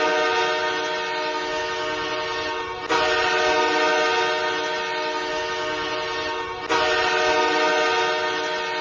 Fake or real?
real